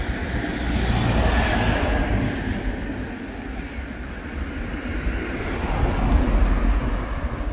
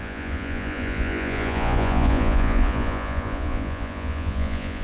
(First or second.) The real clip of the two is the first